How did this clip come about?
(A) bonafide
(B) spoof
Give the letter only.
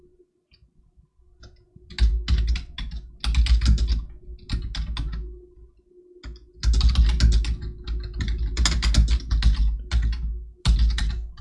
A